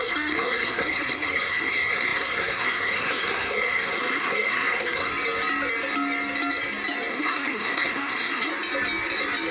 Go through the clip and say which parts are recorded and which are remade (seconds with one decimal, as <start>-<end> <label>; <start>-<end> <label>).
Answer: 0.0-5.1 remade; 5.1-7.1 recorded; 7.1-8.5 remade; 8.5-9.5 recorded